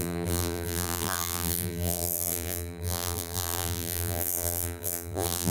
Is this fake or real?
fake